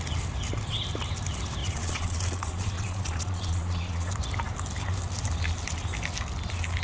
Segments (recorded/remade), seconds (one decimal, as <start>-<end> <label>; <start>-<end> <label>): 0.0-1.6 recorded; 1.6-4.1 remade; 4.1-6.8 recorded

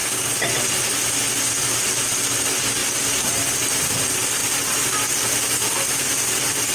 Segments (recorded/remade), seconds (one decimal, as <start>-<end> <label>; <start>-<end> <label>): 0.0-6.7 recorded